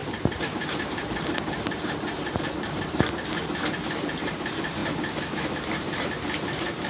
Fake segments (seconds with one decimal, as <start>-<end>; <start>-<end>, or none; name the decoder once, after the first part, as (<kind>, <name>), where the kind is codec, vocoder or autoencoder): 0.0-4.8 (vocoder, BigVGAN v2); 5.3-6.9